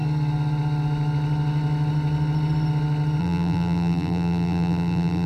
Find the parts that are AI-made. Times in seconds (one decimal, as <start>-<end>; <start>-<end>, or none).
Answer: 3.2-5.3